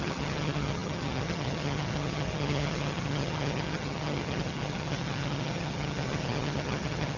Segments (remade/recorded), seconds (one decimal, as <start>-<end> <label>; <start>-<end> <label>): 0.0-7.2 remade